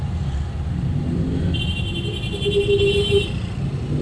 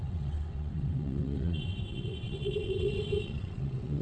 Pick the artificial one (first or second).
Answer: second